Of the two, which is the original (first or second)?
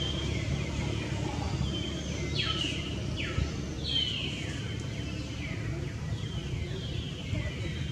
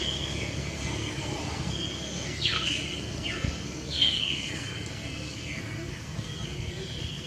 first